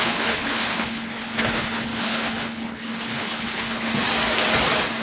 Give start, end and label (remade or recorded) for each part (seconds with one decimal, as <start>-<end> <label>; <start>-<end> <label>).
0.0-3.9 remade; 3.9-5.0 recorded